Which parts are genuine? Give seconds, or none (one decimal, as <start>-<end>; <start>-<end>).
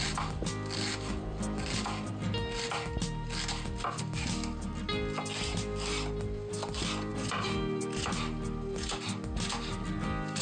0.0-10.4